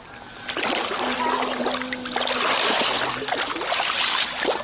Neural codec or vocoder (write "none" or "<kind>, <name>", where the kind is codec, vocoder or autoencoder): none